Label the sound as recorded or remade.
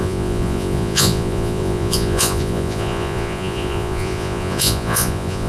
remade